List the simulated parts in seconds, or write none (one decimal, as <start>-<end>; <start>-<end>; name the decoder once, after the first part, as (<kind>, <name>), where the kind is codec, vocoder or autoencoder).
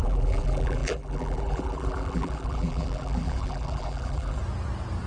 0.0-4.4 (vocoder, BigVGAN v2)